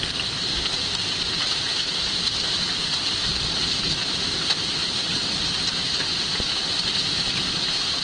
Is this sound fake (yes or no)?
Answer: no